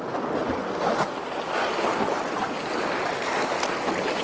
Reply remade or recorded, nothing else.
recorded